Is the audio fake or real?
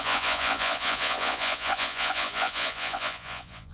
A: fake